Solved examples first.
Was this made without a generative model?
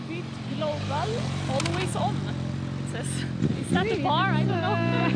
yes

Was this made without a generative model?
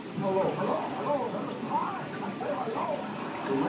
yes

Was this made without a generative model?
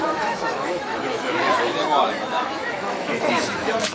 no